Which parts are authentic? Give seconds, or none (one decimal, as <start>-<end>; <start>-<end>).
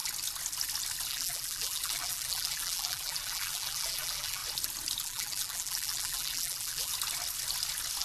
0.0-1.1; 4.4-5.0; 6.9-8.0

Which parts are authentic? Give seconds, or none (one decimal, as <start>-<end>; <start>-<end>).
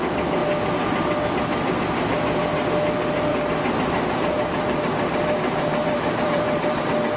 0.0-3.3; 6.8-7.2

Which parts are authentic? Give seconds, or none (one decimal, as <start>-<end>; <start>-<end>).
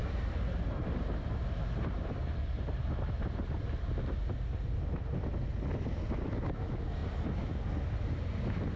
3.8-8.8